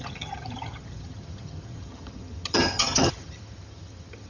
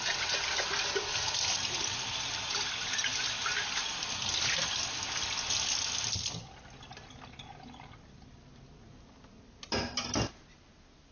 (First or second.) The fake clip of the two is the first